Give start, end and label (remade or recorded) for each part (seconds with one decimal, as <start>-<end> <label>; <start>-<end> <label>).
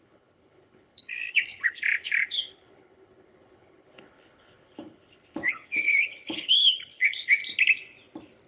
0.0-7.4 remade; 7.4-8.5 recorded